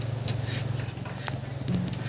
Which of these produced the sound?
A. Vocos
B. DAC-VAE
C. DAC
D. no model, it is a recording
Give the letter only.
D